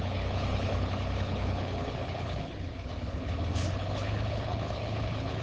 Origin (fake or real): fake